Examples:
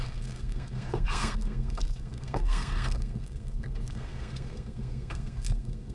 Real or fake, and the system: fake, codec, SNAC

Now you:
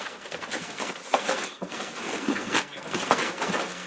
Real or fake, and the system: fake, codec, SNAC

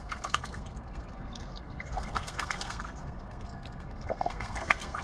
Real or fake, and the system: fake, codec, SNAC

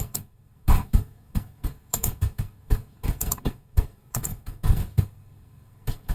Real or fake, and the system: fake, codec, SNAC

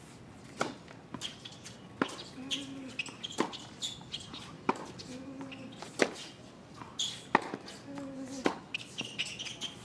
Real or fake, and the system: real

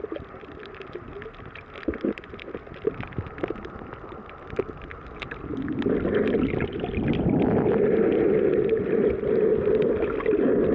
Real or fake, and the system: real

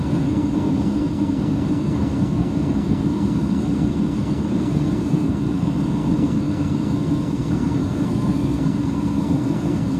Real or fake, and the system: fake, codec, SNAC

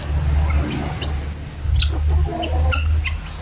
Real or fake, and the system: real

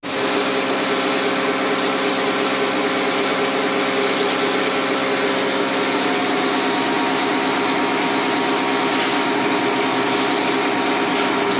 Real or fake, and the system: real